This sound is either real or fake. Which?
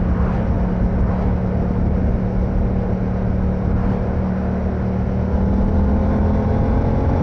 real